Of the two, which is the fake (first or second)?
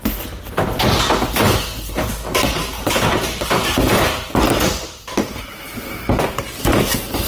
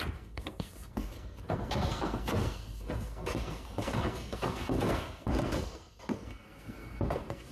second